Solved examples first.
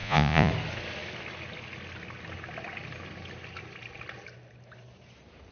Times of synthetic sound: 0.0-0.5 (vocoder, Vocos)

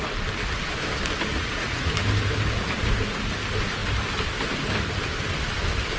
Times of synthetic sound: 1.3-1.9 (vocoder, Vocos)

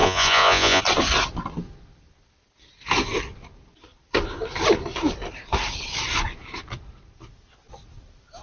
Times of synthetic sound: 0.0-0.8 (vocoder, Vocos)

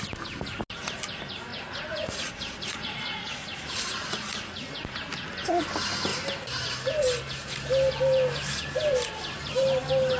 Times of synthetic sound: 1.5-4.7 (vocoder, Vocos)

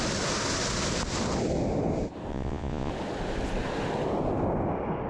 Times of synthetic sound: 2.3-2.9 (vocoder, Vocos)

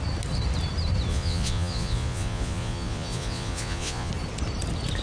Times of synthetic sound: 1.1-4.1 (vocoder, Vocos)

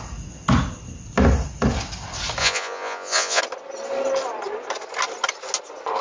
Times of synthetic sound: 2.4-3.4 (vocoder, Vocos)